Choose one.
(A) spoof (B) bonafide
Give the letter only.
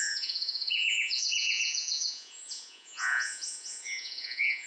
A